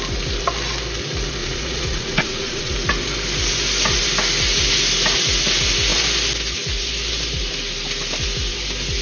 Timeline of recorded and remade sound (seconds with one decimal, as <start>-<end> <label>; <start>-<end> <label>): 0.0-1.4 recorded; 1.4-2.7 remade; 2.7-9.0 recorded